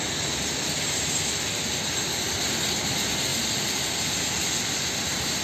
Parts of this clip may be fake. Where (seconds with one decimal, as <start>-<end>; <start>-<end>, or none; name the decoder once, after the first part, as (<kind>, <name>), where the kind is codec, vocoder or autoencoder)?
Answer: 3.3-4.1 (vocoder, BigVGAN v2)